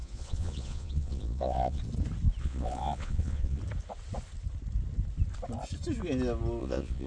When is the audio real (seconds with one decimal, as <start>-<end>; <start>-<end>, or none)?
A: 1.8-2.4; 3.6-6.6